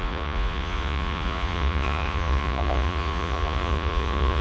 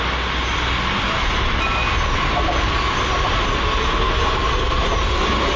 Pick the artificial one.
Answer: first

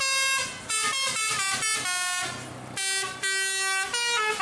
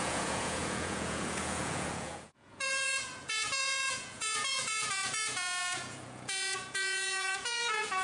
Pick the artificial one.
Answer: second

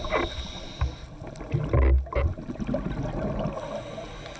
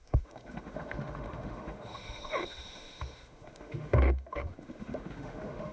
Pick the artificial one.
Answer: second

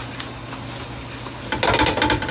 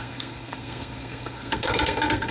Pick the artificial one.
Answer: second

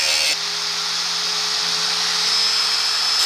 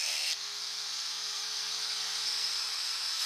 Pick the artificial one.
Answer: second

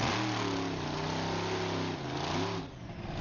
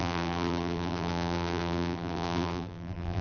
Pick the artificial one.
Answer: second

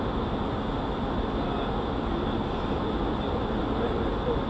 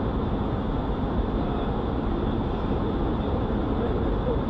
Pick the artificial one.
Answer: second